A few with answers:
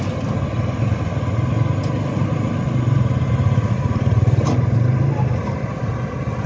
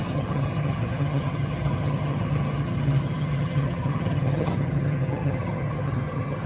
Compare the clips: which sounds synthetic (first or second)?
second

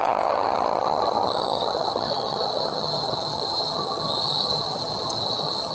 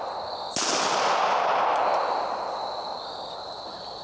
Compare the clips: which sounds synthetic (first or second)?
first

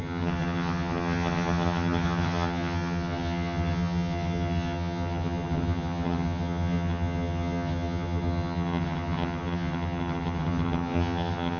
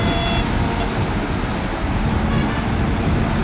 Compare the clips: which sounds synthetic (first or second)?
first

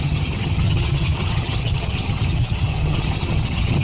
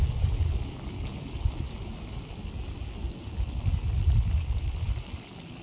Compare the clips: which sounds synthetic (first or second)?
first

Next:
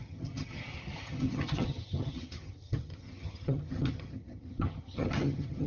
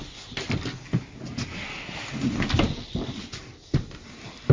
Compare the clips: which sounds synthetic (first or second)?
first